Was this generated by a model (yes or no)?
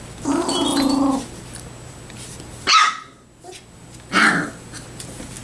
no